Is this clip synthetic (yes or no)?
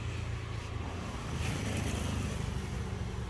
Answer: no